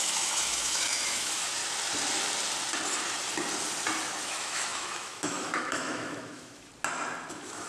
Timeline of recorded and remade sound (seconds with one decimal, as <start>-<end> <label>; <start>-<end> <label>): 0.0-1.6 remade; 1.6-4.2 recorded; 4.2-6.7 remade; 6.7-7.3 recorded; 7.3-7.7 remade